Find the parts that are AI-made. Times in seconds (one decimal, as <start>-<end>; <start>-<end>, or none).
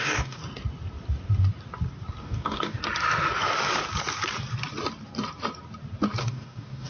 0.0-0.4; 2.2-2.8; 6.2-6.9